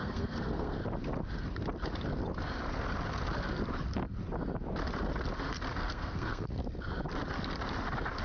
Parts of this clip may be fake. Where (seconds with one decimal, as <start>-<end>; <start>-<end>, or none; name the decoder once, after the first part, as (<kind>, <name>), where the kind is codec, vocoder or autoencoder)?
0.0-0.8 (codec, SNAC); 5.7-6.6